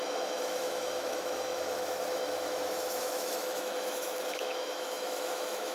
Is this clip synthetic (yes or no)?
yes